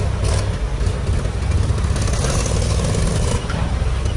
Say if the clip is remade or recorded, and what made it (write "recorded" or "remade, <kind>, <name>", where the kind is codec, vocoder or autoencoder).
recorded